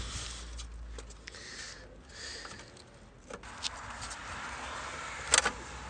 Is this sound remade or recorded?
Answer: recorded